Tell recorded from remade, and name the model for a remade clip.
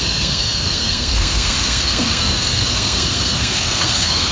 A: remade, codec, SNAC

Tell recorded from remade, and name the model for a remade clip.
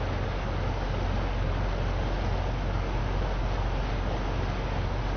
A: recorded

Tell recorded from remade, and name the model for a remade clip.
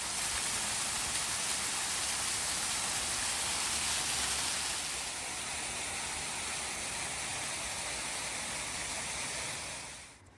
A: recorded